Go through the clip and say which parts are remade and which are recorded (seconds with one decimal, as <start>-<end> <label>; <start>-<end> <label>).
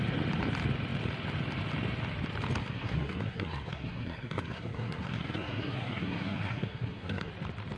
0.0-2.6 recorded; 2.6-7.3 remade; 7.3-7.8 recorded